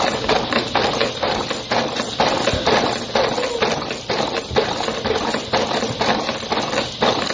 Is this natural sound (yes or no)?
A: yes